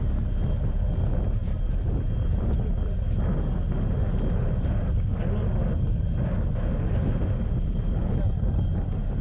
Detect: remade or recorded recorded